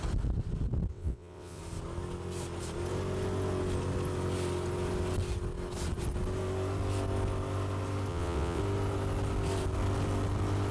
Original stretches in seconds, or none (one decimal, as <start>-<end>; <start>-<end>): 0.0-0.9; 1.6-8.1; 8.6-10.7